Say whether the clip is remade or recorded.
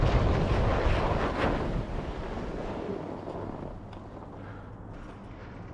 recorded